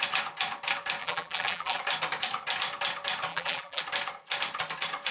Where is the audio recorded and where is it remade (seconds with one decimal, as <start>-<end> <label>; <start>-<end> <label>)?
0.0-1.0 recorded; 1.0-1.8 remade; 1.8-3.3 recorded; 3.3-3.8 remade; 3.8-5.1 recorded